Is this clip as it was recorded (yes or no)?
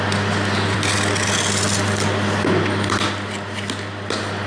yes